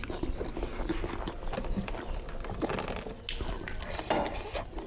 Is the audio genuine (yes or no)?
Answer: yes